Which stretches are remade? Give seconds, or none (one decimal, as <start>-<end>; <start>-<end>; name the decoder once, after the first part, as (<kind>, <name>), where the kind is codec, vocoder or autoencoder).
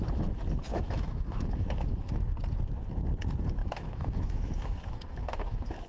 0.7-2.3 (autoencoder, DAC-VAE); 3.6-5.9